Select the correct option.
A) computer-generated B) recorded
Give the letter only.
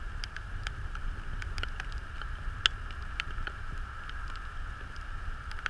B